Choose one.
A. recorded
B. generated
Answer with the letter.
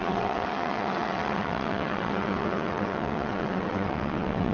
B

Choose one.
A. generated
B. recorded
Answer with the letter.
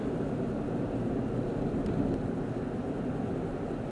B